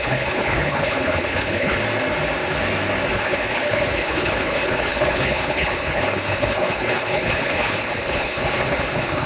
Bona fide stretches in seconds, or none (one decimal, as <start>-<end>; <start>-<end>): 1.8-3.1